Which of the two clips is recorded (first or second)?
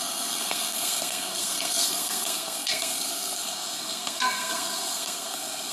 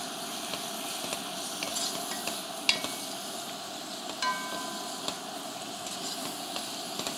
second